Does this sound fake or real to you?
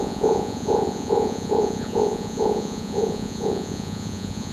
fake